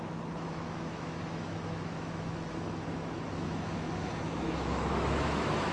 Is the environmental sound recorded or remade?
remade